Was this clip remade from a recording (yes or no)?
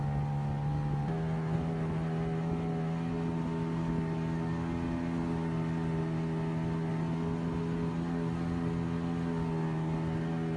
no